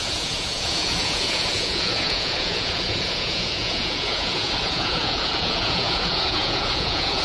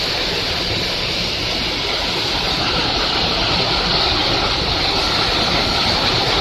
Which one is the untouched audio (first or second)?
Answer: second